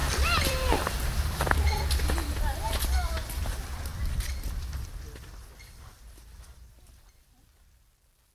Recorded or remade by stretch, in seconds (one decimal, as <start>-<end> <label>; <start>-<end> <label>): 0.0-8.3 remade